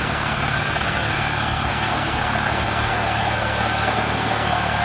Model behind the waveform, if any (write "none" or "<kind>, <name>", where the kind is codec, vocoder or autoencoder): codec, SNAC